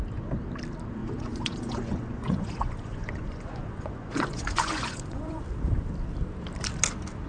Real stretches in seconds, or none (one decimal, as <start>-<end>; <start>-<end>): 0.0-1.0; 5.4-7.3